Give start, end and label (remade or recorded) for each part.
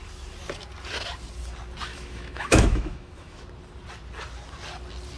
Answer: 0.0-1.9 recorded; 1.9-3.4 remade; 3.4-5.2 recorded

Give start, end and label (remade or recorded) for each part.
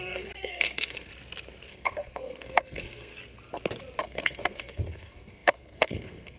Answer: 0.0-1.1 remade; 1.1-1.7 recorded; 1.7-3.1 remade; 3.1-4.0 recorded; 4.0-6.4 remade